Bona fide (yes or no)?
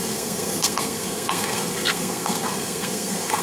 no